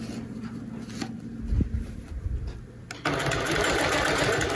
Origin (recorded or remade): recorded